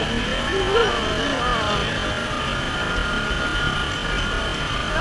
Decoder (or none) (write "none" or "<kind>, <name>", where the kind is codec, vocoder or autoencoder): none